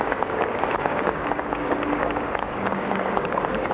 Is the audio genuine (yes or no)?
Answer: no